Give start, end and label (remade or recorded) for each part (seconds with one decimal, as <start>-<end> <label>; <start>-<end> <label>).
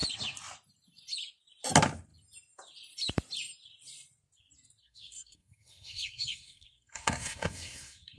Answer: 0.0-4.8 recorded; 4.8-8.2 remade